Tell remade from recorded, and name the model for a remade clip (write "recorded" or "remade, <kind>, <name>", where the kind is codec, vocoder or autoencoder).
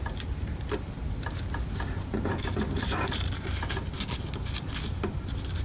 recorded